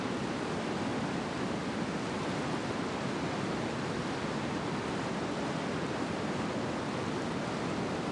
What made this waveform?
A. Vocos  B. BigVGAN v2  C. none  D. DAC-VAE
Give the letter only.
C